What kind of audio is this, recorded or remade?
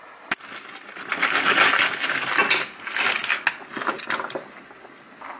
recorded